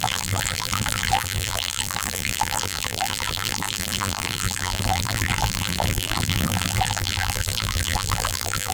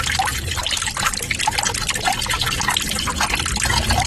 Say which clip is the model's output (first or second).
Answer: first